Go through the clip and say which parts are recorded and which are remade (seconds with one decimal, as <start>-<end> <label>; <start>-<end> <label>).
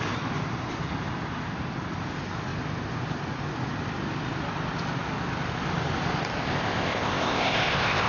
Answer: 0.0-6.4 recorded; 6.4-8.1 remade